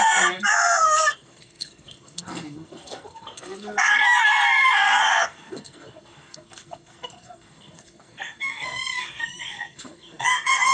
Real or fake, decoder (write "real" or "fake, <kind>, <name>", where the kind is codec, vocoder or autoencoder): fake, codec, SNAC